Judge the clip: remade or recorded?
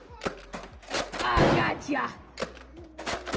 recorded